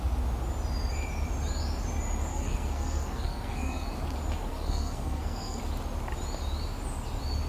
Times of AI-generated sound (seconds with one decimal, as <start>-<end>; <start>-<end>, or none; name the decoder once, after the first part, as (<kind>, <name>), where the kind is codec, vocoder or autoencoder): 2.3-3.9 (codec, SNAC); 4.5-5.6